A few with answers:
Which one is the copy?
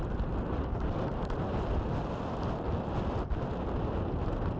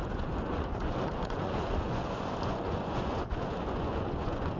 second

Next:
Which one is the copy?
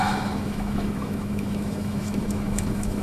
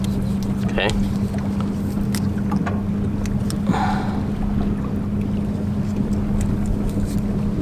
first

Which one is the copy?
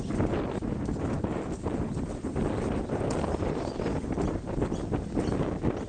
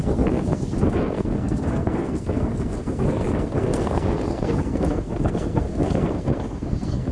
second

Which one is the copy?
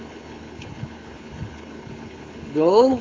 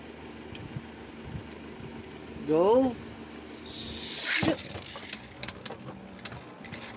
first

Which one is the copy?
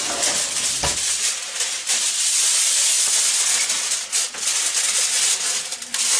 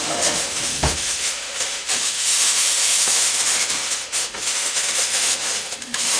second